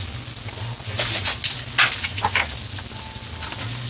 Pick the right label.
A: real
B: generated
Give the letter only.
A